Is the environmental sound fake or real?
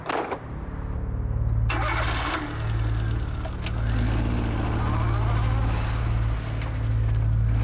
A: real